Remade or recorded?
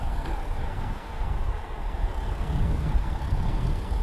remade